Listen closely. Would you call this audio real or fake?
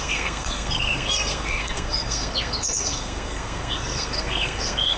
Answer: fake